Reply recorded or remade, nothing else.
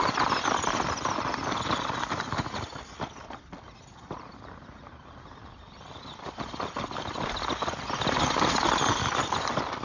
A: recorded